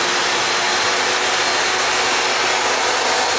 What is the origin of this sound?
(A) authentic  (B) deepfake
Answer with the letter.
A